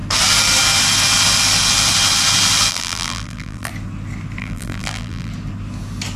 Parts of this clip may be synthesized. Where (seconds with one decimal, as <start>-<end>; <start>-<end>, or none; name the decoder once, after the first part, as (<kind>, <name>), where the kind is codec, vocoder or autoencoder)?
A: 2.7-3.7 (vocoder, BigVGAN v2); 4.4-5.3